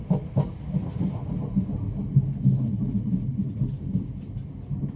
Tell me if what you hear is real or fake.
real